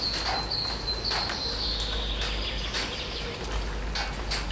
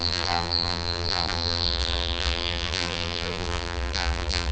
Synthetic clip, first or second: second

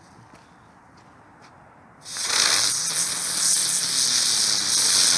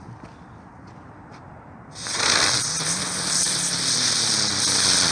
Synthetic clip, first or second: second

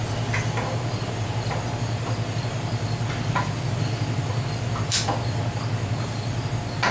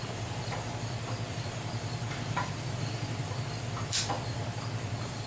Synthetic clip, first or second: second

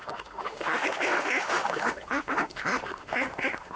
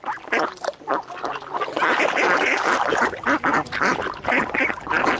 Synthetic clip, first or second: first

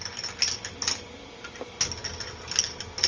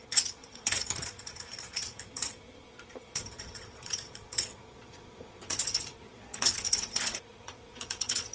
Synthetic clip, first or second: second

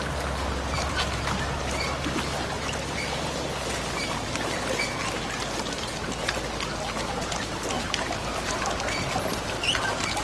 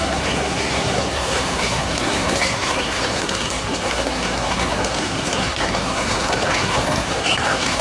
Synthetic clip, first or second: second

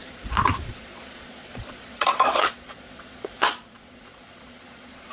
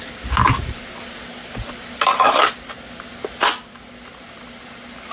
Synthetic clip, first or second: first